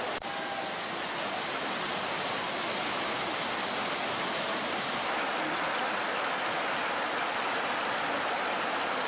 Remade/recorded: recorded